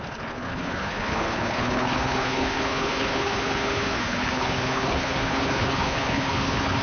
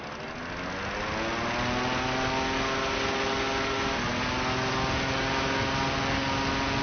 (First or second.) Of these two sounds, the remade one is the first